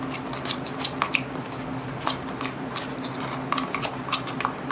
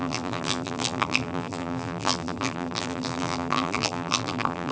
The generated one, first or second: second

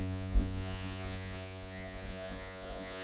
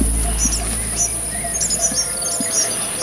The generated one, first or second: first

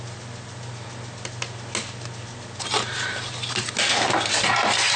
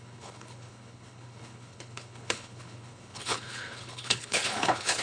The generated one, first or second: second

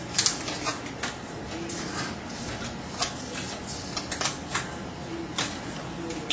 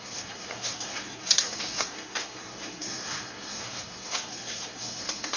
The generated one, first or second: second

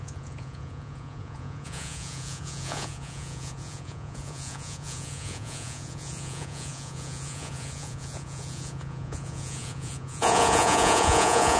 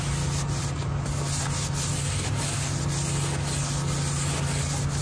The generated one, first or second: first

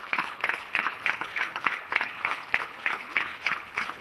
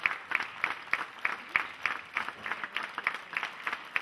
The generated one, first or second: first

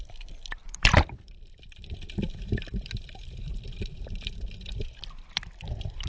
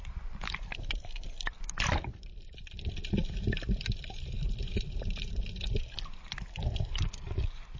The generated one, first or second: first